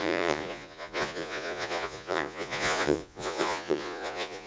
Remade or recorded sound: remade